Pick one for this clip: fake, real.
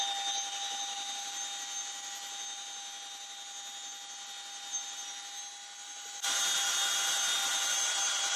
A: real